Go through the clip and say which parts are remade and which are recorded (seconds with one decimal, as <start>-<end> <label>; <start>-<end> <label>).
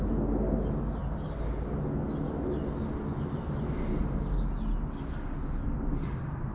0.0-6.5 recorded